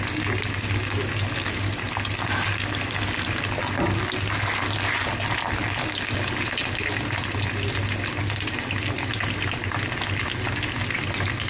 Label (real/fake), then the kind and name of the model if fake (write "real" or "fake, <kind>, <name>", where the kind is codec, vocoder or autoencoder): real